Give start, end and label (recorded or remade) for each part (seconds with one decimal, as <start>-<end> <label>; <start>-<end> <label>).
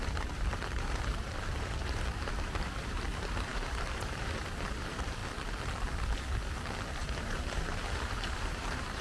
0.0-5.2 remade; 5.2-6.9 recorded; 6.9-9.0 remade